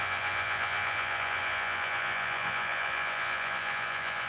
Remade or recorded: remade